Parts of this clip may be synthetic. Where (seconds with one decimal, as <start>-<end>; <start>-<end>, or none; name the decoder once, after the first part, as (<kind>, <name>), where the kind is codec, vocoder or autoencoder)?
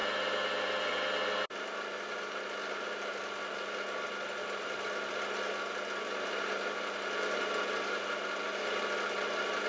none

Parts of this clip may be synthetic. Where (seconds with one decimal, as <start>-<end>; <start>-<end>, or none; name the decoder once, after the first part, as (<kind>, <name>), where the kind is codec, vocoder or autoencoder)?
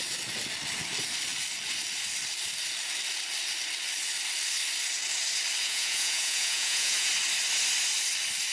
5.6-7.1 (vocoder, Vocos)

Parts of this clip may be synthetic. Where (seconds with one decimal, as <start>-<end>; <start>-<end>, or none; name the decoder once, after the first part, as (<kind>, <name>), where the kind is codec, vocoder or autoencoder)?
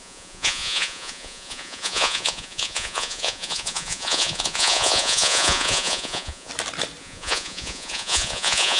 0.0-6.5 (vocoder, Vocos); 7.0-8.8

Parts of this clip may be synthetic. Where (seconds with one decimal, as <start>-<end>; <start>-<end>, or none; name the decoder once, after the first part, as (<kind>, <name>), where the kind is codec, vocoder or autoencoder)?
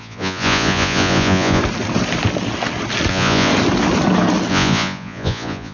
0.0-1.6 (vocoder, Vocos); 3.1-3.5; 4.5-5.7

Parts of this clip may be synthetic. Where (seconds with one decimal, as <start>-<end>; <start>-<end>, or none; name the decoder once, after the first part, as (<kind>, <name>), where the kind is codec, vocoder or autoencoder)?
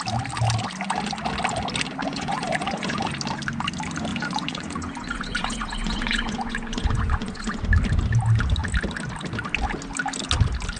2.0-3.1 (vocoder, Vocos); 4.1-7.6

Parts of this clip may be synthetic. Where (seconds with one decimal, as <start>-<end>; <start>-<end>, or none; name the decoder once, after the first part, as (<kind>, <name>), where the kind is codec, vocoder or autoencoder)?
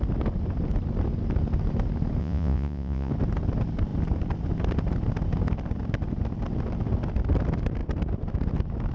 2.2-3.1 (vocoder, Vocos)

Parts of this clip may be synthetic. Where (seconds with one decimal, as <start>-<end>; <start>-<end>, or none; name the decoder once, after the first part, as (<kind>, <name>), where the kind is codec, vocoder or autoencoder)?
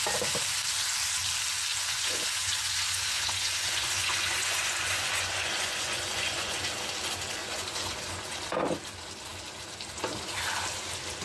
1.7-6.6 (vocoder, Vocos); 7.4-8.3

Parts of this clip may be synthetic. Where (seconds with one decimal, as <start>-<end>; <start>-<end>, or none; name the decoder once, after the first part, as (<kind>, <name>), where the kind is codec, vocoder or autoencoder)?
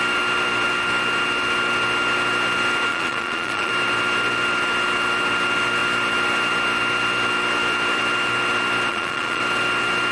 2.9-3.7 (vocoder, Vocos); 8.9-9.4